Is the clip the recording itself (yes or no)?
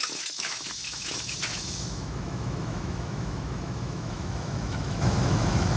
no